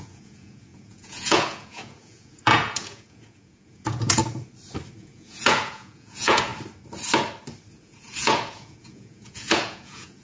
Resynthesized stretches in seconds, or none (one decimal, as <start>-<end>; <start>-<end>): 0.0-4.2; 5.0-6.5; 7.7-10.2